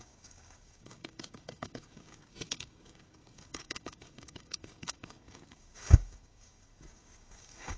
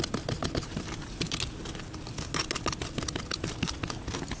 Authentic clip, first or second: second